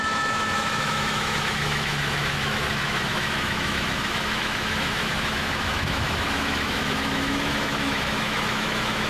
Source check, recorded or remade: remade